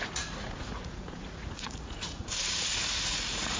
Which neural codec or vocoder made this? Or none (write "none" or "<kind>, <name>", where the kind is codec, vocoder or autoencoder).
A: vocoder, Vocos